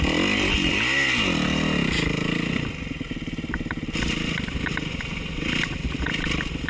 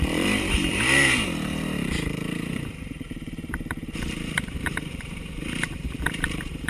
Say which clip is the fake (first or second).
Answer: second